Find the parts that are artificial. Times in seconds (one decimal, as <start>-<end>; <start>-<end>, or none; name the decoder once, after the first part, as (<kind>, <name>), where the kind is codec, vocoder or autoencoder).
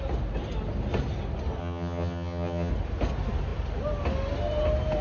1.6-2.7 (vocoder, HiFi-GAN)